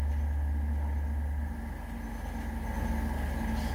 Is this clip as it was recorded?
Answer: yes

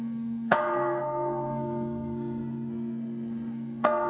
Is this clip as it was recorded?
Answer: no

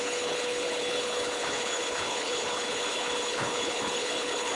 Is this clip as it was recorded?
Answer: no